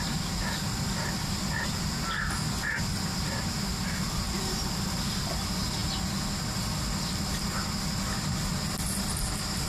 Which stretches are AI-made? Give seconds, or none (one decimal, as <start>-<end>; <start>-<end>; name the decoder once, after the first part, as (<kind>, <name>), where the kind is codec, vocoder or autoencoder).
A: none